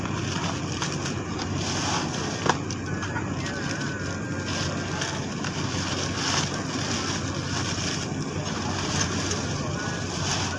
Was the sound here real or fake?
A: real